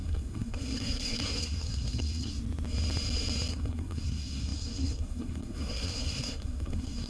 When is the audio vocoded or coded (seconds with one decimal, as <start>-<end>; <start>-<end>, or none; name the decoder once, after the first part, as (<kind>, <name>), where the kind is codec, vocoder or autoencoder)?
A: 0.0-2.3 (codec, SNAC); 3.5-7.1